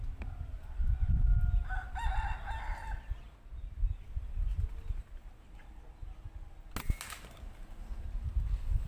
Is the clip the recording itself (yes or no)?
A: yes